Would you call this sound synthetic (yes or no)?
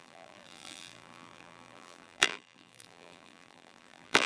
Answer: yes